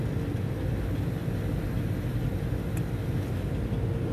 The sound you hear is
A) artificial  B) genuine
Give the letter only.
B